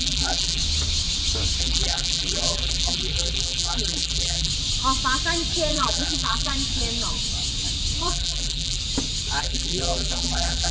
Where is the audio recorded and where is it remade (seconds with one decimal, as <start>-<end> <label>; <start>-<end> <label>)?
0.0-0.6 remade; 0.6-1.6 recorded; 1.6-4.5 remade; 4.5-5.7 recorded; 5.7-6.5 remade; 6.5-8.1 recorded; 8.1-8.8 remade; 8.8-9.4 recorded; 9.4-10.7 remade